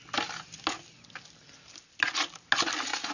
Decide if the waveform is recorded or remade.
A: recorded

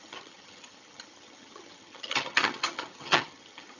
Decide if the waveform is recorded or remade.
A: remade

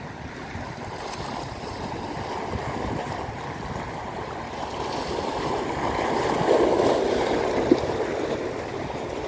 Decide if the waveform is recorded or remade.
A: recorded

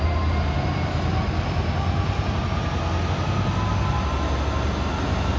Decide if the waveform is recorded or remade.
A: recorded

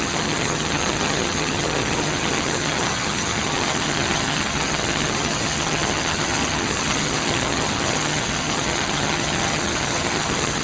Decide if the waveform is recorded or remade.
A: remade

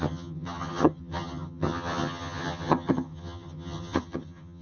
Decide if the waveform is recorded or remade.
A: remade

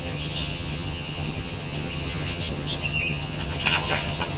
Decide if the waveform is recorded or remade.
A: remade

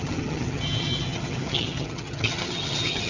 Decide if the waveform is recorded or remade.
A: remade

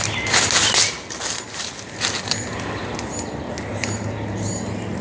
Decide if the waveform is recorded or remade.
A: recorded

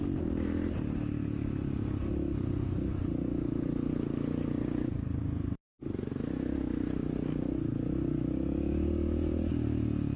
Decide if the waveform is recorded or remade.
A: recorded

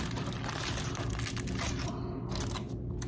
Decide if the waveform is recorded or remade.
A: recorded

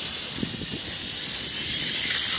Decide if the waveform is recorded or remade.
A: recorded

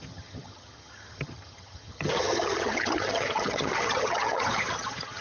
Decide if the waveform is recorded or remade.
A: remade